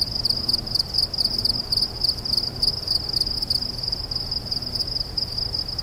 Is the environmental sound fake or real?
real